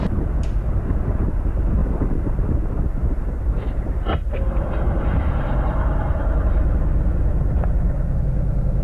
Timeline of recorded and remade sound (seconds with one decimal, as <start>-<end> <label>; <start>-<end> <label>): 0.0-1.8 recorded; 1.8-2.4 remade; 2.4-3.0 recorded; 3.0-8.2 remade; 8.2-8.8 recorded